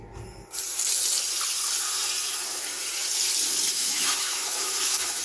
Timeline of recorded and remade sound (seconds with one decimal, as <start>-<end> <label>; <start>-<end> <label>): 0.0-3.8 recorded; 3.8-5.2 remade